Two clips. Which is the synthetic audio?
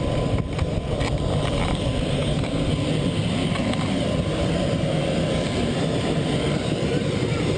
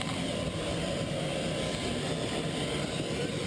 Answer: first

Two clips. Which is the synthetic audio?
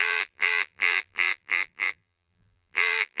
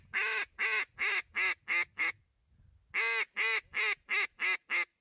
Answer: first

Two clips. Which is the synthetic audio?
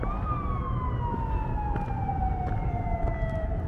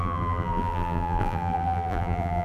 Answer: second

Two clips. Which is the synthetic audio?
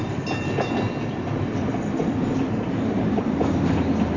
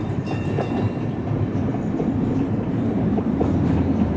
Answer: second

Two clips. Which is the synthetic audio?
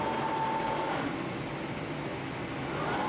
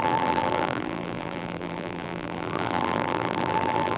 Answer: second